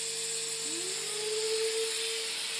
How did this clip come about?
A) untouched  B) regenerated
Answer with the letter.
A